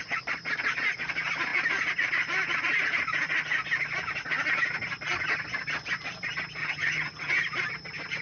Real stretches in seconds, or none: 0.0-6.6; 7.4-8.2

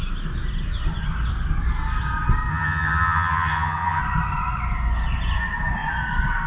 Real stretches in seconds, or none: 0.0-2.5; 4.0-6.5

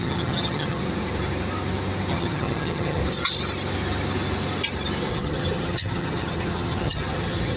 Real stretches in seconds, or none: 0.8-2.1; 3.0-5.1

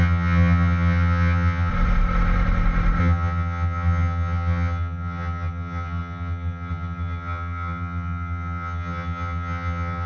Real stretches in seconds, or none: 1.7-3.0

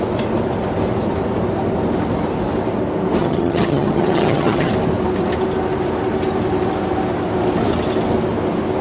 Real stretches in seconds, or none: 0.0-3.2; 4.7-8.8

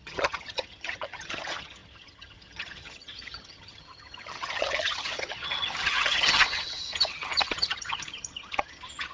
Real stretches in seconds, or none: none